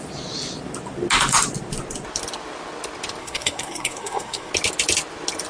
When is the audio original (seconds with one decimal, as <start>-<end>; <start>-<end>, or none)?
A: 0.0-3.2; 4.5-5.5